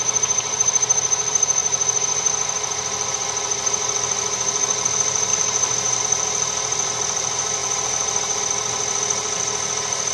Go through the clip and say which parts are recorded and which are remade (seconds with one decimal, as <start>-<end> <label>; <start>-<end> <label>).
0.0-5.3 recorded; 5.3-6.0 remade; 6.0-7.6 recorded; 7.6-8.4 remade; 8.4-10.1 recorded